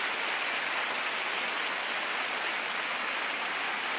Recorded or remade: recorded